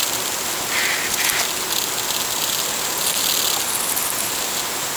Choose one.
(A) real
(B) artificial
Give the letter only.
A